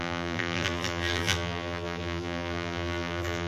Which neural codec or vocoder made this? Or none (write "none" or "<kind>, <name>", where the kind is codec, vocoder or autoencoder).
vocoder, BigVGAN v2